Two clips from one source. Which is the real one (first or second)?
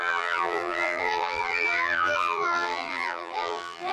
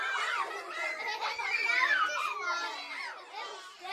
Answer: second